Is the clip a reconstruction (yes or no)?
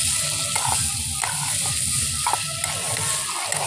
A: no